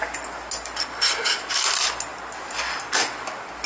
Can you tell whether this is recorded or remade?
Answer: recorded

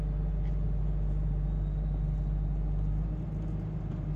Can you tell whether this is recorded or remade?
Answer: recorded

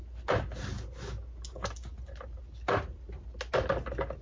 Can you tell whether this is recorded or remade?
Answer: recorded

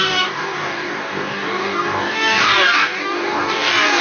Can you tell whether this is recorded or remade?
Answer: remade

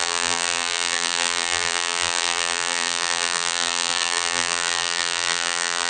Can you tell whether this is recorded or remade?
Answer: remade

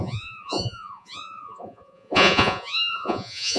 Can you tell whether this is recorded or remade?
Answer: remade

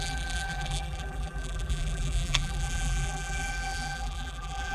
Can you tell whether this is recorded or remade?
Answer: remade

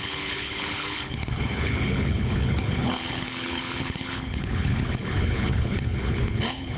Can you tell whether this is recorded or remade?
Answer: remade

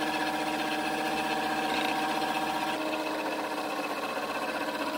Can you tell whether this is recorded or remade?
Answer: recorded